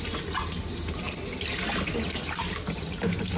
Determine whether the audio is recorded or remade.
recorded